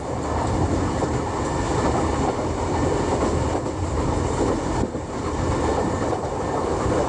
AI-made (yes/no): no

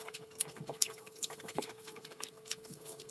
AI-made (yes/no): yes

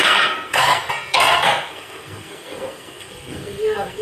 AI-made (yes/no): yes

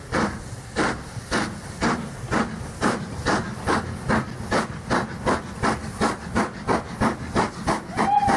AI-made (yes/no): no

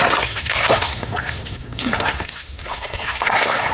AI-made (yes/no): yes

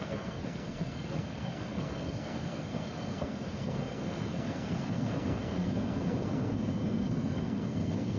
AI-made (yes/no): yes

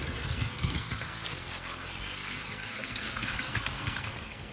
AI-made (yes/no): yes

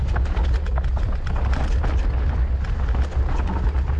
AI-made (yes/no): no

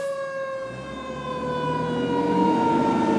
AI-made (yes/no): no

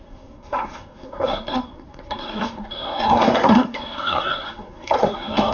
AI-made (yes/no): yes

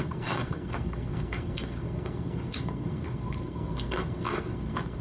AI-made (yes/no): yes